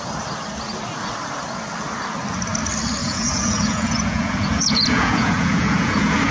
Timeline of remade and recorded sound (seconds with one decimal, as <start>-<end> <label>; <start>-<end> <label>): 0.0-3.0 recorded; 3.0-6.3 remade